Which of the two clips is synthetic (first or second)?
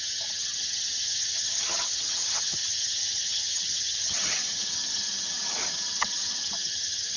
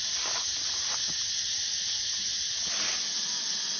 first